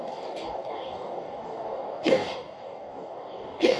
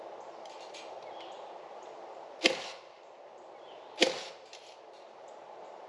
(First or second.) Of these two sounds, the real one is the second